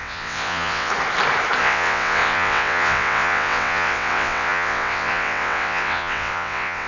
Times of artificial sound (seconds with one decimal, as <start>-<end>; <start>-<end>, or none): 0.0-0.9; 1.6-6.9